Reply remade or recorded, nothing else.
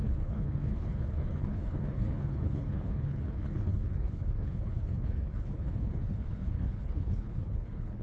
remade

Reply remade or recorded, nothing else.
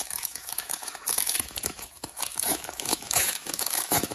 remade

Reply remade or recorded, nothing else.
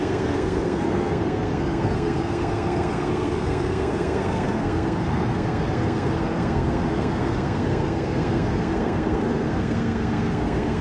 remade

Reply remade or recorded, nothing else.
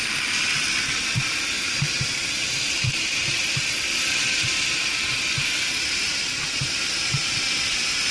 remade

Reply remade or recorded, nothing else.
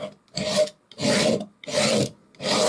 recorded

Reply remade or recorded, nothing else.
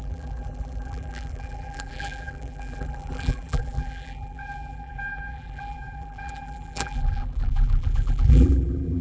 remade